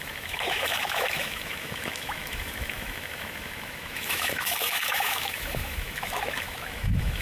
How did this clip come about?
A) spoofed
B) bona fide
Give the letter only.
A